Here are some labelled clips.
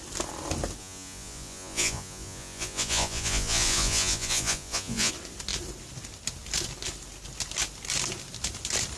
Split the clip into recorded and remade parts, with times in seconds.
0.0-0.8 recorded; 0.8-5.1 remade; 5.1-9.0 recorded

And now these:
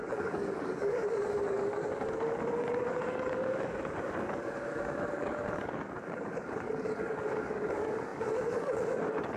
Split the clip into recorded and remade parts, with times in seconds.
0.0-9.4 remade

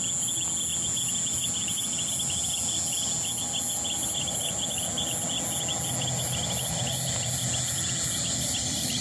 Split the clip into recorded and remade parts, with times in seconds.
0.0-4.0 recorded; 4.0-4.6 remade; 4.6-9.0 recorded

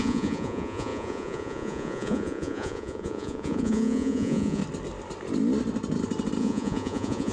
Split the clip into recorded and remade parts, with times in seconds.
0.0-4.6 remade; 4.6-6.4 recorded; 6.4-7.3 remade

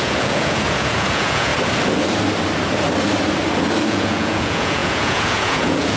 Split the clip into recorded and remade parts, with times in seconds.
0.0-1.5 remade; 1.5-3.9 recorded; 3.9-6.0 remade